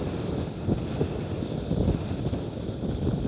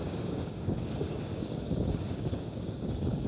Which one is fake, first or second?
second